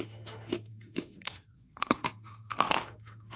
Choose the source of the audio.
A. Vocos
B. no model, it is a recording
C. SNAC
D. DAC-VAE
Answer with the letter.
D